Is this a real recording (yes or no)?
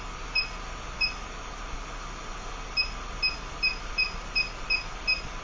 yes